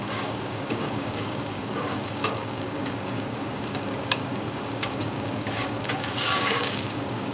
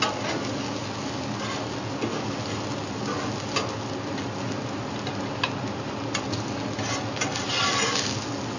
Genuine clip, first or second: second